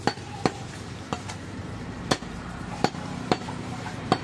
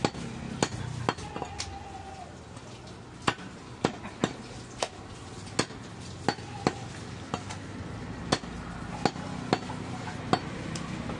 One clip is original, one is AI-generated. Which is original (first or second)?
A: second